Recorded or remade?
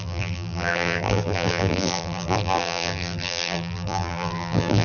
remade